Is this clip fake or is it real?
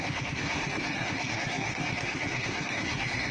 fake